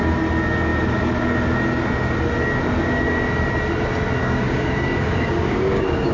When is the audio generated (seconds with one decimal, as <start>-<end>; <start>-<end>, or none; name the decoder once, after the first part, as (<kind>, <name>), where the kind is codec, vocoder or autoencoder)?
4.2-6.1 (codec, DAC)